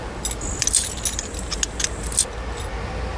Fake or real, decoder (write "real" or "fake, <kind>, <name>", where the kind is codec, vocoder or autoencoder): real